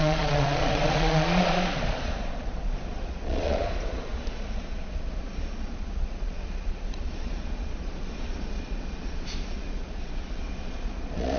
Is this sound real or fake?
fake